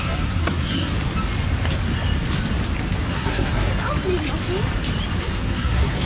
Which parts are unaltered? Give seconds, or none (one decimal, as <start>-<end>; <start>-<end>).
0.9-3.1; 3.7-5.2